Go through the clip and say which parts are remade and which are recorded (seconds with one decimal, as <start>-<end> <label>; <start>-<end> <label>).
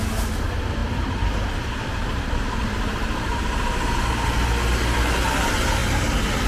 0.0-0.8 recorded; 0.8-4.0 remade; 4.0-6.5 recorded